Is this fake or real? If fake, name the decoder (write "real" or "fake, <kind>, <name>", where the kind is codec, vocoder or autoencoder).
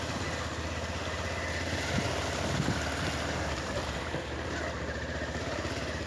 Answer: real